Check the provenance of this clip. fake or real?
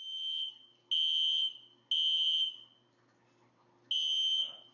real